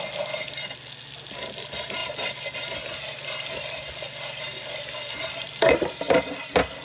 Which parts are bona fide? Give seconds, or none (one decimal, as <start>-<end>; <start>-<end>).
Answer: 0.0-6.8